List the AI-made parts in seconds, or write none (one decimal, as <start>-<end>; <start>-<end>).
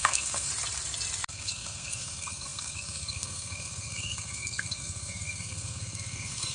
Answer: 0.0-0.5; 1.3-6.5